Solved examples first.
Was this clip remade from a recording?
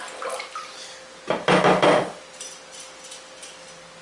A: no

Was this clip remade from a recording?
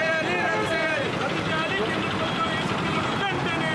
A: no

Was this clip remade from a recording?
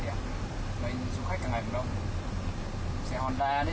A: no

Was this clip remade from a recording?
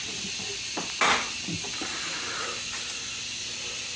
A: no